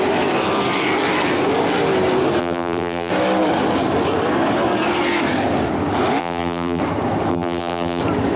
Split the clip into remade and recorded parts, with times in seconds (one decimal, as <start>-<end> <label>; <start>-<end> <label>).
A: 0.0-2.4 recorded; 2.4-3.1 remade; 3.1-6.2 recorded; 6.2-6.8 remade; 6.8-7.3 recorded; 7.3-8.0 remade; 8.0-8.4 recorded